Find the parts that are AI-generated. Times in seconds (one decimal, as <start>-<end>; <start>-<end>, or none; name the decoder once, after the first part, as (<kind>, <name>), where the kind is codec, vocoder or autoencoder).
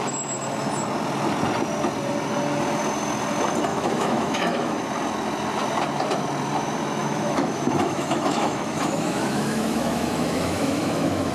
3.7-4.8 (autoencoder, DAC-VAE); 7.0-11.3